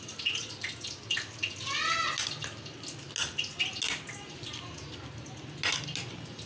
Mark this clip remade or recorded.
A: recorded